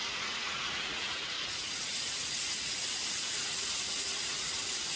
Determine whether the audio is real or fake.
fake